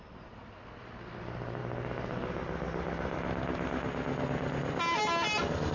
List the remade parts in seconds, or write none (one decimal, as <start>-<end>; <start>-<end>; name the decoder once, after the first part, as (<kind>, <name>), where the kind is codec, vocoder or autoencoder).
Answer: none